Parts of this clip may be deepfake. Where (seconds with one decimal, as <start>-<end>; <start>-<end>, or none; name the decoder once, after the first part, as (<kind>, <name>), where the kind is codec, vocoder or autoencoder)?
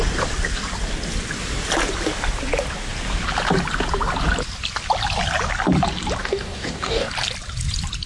6.2-7.1 (codec, DAC)